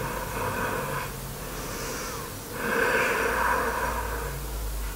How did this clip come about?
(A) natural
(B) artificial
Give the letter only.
A